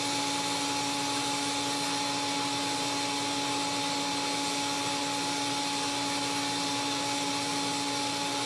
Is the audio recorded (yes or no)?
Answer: yes